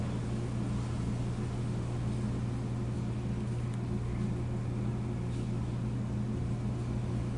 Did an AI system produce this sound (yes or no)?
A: no